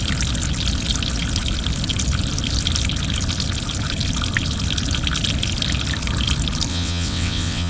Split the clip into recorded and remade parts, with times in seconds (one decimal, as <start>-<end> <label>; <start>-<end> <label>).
0.0-6.7 recorded; 6.7-7.7 remade